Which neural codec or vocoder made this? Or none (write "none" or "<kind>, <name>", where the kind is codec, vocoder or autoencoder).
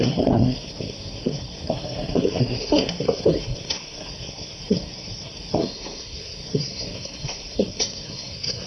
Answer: codec, SNAC